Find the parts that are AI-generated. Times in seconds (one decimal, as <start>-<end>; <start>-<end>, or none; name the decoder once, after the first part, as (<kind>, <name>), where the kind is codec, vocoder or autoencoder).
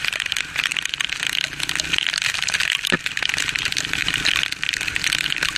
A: 0.0-0.7 (vocoder, BigVGAN v2); 3.0-4.0; 5.0-5.6